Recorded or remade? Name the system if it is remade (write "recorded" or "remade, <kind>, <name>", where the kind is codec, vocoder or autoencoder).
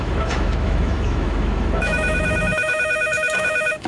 remade, autoencoder, DAC-VAE